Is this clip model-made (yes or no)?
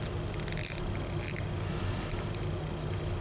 no